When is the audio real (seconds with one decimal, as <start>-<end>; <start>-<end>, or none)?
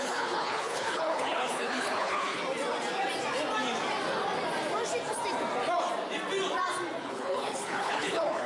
2.4-7.0